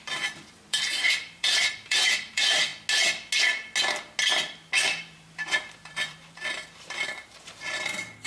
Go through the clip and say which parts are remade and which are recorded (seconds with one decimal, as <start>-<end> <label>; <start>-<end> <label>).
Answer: 0.0-2.7 remade; 2.7-5.0 recorded; 5.0-8.3 remade